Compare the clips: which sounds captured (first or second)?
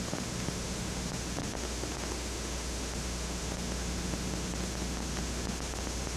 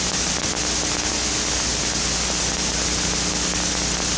second